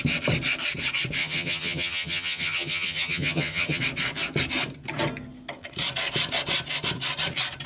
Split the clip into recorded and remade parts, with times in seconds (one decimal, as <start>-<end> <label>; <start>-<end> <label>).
0.0-1.2 recorded; 1.2-3.8 remade; 3.8-7.7 recorded